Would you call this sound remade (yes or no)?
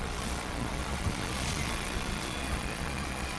yes